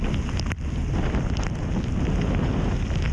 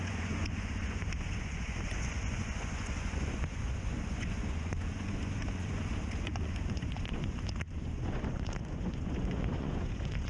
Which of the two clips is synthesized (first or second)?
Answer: second